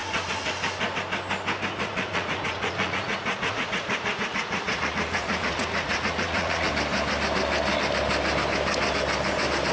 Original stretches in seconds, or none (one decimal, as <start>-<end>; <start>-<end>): 0.5-1.7; 6.7-9.7